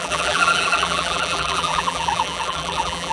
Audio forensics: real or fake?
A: fake